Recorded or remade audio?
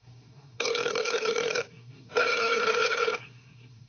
remade